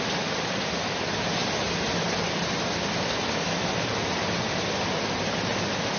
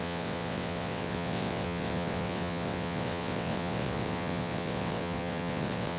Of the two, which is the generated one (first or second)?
second